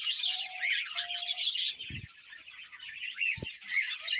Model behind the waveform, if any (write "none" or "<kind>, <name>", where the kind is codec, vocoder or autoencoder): none